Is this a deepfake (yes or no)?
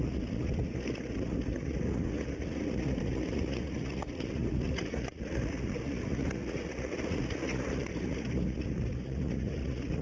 yes